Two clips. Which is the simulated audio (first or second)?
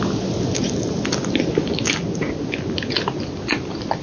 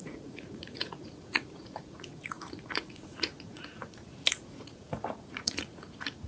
second